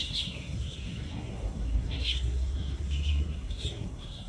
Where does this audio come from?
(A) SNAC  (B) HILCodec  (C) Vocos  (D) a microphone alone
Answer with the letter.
A